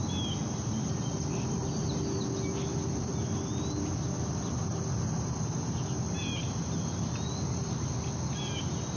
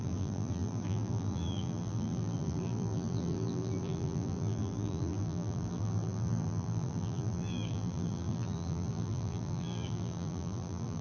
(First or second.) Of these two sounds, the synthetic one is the second